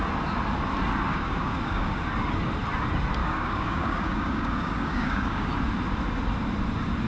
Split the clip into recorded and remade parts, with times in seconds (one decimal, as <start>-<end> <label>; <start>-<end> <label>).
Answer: 0.0-1.1 recorded; 1.1-2.0 remade; 2.0-3.2 recorded; 3.2-5.5 remade; 5.5-7.1 recorded